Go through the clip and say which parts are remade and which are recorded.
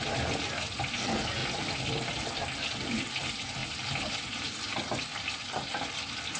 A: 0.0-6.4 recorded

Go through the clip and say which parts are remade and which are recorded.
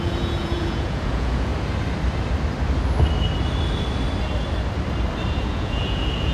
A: 0.0-1.5 remade; 1.5-5.3 recorded; 5.3-6.3 remade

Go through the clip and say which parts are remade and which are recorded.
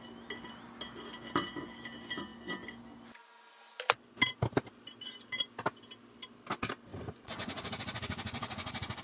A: 0.0-6.9 recorded; 6.9-9.0 remade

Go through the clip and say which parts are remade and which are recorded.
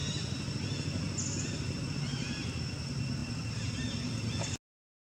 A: 0.0-5.0 recorded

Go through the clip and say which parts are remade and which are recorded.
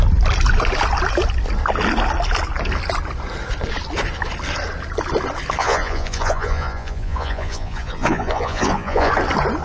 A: 0.0-5.6 recorded; 5.6-9.1 remade; 9.1-9.6 recorded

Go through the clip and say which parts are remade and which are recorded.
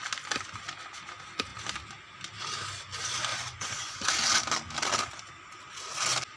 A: 0.0-3.3 recorded; 3.3-4.1 remade; 4.1-6.4 recorded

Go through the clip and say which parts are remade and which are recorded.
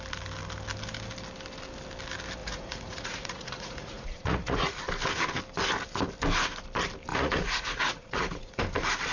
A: 0.0-2.4 recorded; 2.4-4.8 remade; 4.8-7.1 recorded; 7.1-8.6 remade; 8.6-9.1 recorded